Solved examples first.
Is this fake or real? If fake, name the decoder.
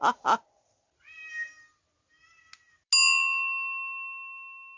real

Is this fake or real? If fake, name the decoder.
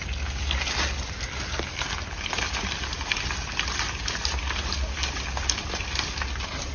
real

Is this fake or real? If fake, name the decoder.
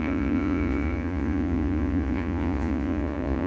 fake, vocoder, Vocos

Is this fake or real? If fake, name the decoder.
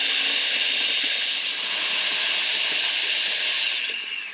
real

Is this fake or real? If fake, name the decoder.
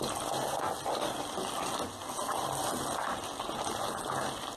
real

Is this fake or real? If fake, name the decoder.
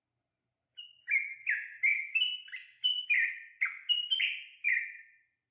real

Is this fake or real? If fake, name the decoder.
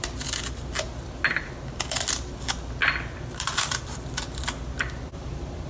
real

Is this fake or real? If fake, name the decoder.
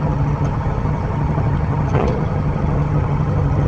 fake, vocoder, HiFi-GAN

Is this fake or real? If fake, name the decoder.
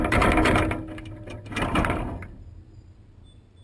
real